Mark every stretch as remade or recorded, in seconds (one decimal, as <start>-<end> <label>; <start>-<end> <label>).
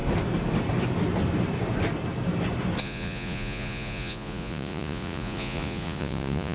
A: 0.0-2.8 recorded; 2.8-6.5 remade